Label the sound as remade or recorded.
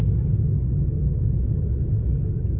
recorded